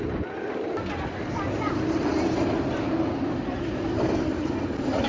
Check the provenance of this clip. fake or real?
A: real